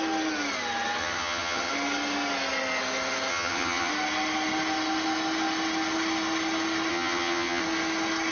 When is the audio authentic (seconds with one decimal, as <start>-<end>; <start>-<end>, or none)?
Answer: 0.0-1.0; 1.7-3.3; 3.9-6.9; 7.6-8.3

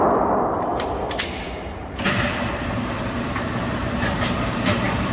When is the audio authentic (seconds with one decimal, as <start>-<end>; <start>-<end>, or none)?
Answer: 0.0-0.7; 3.8-5.1

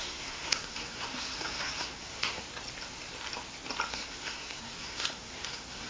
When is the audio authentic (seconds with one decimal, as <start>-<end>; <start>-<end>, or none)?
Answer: 2.4-3.9

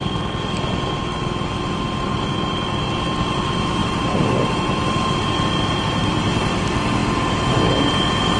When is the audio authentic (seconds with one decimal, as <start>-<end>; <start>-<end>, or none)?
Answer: 0.0-3.8; 4.8-8.4

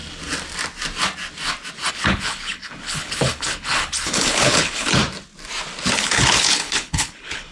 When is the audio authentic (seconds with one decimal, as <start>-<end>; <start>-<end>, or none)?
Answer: 0.0-1.9; 5.0-5.8

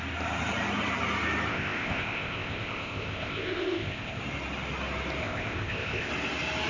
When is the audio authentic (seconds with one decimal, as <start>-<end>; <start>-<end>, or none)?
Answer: 0.0-1.5; 4.2-5.2; 6.1-6.7

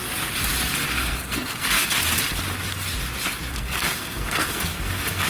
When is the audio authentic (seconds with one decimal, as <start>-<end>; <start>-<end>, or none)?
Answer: 0.0-0.9; 2.0-3.5

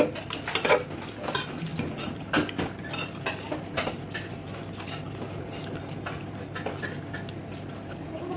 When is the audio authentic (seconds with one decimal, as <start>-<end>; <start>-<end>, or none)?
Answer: 0.0-8.4